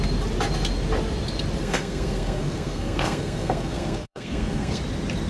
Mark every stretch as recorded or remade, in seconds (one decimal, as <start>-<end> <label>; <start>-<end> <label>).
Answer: 0.0-1.6 recorded; 1.6-4.8 remade; 4.8-5.3 recorded